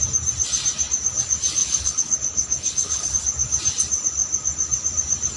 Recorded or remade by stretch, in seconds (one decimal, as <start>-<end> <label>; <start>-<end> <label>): 0.0-1.6 recorded; 1.6-3.1 remade; 3.1-5.4 recorded